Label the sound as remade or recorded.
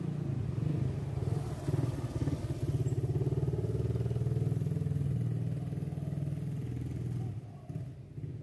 recorded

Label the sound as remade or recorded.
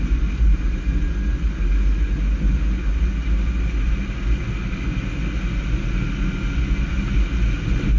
recorded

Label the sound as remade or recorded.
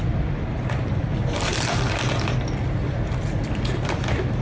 recorded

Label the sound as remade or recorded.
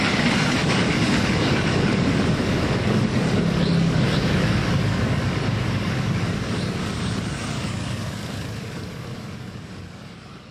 remade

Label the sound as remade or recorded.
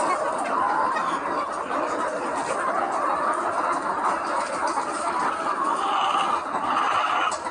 recorded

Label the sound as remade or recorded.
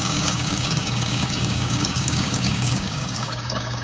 remade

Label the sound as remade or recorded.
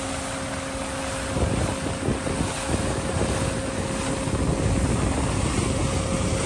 recorded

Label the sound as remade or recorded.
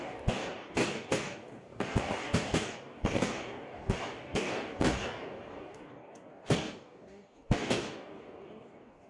remade